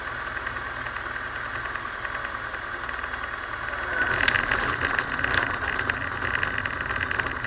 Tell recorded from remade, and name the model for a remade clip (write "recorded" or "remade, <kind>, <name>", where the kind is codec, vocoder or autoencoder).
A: recorded